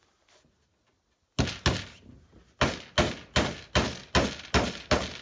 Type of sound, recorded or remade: recorded